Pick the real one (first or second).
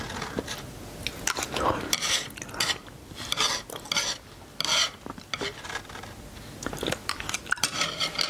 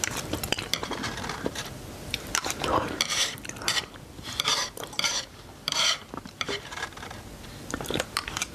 first